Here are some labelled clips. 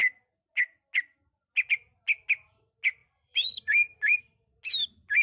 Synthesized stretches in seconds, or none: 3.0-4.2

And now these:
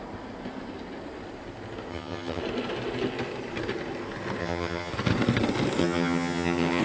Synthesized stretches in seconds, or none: 1.9-2.4; 4.4-4.9; 5.8-6.8

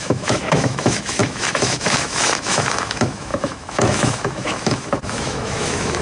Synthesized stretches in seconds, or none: 0.0-6.0

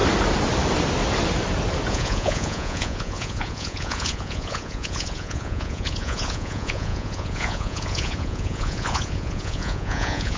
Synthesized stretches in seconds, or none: 1.9-10.4